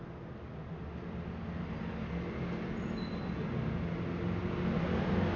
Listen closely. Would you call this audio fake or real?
real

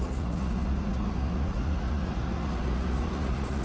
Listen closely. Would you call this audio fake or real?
fake